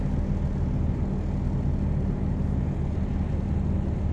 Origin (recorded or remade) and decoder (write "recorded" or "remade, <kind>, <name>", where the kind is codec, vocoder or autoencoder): recorded